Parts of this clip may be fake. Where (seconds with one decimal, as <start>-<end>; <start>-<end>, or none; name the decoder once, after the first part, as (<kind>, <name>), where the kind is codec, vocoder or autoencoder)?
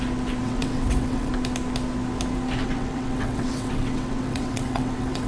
0.4-1.3 (vocoder, WaveNeXt); 2.6-5.3